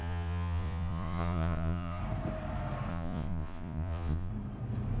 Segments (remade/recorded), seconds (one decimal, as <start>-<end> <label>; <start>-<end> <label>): 0.0-2.0 remade; 2.0-2.9 recorded; 2.9-4.3 remade; 4.3-5.0 recorded